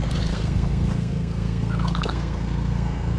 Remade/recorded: remade